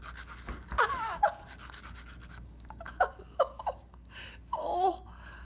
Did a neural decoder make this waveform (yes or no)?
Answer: yes